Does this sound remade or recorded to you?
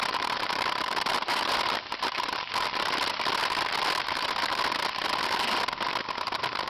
remade